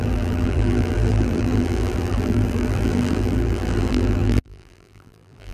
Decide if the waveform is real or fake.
fake